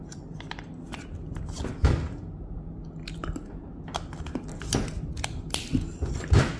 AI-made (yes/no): no